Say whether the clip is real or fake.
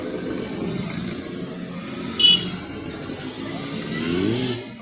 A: real